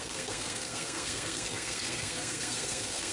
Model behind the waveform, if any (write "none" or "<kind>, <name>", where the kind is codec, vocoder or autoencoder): codec, SNAC